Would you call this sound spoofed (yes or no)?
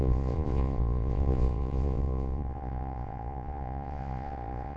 yes